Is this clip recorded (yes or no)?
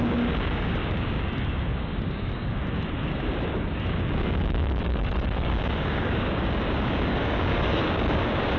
no